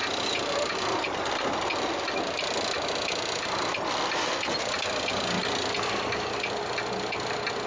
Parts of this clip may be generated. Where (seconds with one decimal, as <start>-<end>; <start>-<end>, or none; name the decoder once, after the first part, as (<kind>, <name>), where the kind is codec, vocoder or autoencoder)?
none